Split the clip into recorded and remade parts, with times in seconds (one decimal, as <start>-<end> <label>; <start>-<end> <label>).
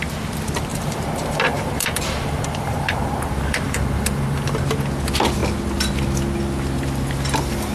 0.0-0.7 recorded; 0.7-4.6 remade; 4.6-7.7 recorded